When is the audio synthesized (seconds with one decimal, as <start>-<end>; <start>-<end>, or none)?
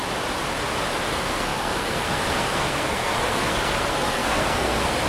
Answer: 1.1-5.1